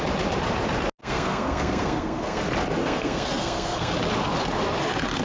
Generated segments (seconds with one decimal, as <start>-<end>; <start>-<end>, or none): 1.0-2.4; 2.8-3.9

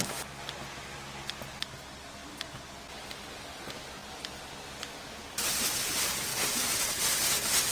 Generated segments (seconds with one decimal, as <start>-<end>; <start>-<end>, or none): 6.3-7.0

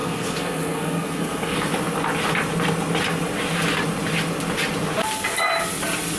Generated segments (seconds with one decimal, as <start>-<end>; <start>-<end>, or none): 0.0-1.7

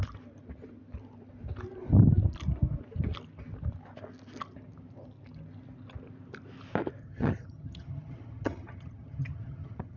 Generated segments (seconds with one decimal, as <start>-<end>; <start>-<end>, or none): 7.0-10.0

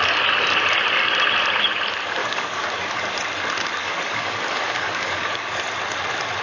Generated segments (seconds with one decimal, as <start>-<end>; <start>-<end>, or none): 2.2-3.0; 3.8-5.6